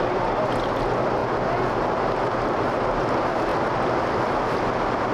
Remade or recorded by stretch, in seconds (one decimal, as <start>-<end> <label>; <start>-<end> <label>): 0.0-5.1 recorded